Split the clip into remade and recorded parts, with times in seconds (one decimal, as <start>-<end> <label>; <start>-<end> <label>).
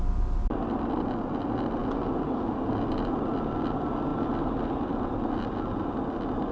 0.0-6.5 recorded